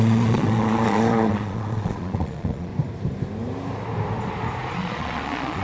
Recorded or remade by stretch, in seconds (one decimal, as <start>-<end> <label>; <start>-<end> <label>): 0.0-2.7 remade; 2.7-4.7 recorded; 4.7-5.6 remade